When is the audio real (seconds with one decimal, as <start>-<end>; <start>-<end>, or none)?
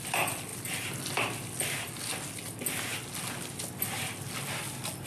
0.0-5.1